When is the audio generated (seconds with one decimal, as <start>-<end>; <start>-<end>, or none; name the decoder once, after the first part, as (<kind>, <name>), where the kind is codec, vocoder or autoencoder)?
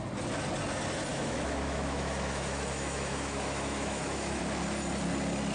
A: 1.1-4.4 (autoencoder, DAC-VAE)